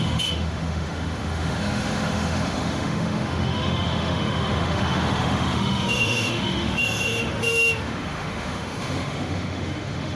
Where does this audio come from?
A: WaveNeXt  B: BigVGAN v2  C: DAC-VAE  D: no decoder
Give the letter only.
C